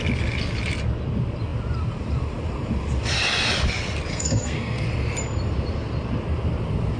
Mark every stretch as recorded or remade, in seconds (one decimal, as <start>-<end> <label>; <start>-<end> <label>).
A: 0.0-4.1 recorded; 4.1-4.8 remade; 4.8-7.0 recorded